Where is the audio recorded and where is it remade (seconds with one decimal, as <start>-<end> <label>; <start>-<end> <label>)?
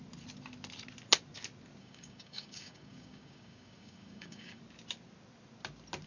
0.0-1.8 recorded; 1.8-4.6 remade; 4.6-6.1 recorded